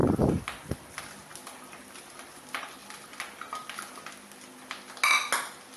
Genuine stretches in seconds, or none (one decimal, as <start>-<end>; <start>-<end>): 0.0-5.8